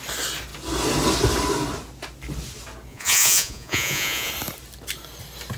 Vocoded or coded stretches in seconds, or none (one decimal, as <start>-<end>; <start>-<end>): 2.9-4.3